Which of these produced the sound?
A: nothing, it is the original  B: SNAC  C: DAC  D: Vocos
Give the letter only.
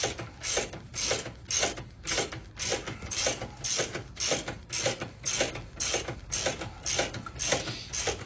A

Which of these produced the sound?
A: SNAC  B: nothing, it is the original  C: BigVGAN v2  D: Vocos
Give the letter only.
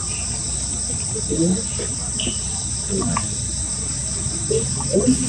B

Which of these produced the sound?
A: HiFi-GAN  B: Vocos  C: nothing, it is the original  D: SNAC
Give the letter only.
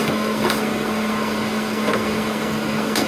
D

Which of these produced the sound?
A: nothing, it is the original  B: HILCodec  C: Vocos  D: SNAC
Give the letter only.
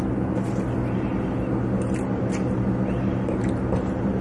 A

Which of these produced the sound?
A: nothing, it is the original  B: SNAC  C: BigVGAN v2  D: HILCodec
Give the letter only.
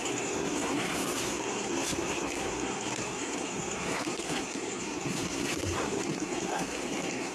B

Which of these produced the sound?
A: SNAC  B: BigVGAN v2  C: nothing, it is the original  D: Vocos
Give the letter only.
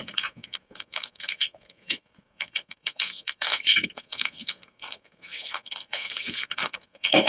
A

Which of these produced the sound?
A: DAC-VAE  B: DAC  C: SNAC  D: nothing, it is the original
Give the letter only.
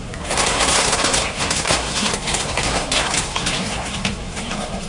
C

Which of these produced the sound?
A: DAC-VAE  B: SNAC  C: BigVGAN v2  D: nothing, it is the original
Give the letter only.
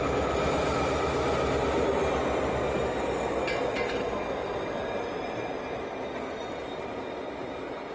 D